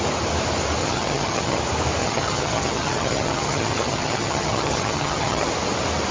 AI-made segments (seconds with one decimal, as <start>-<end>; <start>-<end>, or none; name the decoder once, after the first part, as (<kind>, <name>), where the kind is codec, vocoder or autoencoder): 0.8-1.6 (vocoder, HiFi-GAN); 2.0-5.5